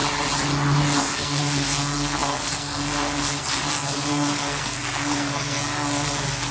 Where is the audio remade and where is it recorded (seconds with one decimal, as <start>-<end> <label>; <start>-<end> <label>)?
0.0-1.0 recorded; 1.0-6.5 remade